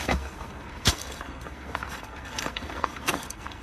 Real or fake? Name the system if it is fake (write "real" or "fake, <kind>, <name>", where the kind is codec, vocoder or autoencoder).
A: fake, codec, SNAC